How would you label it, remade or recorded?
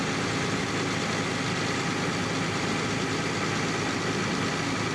recorded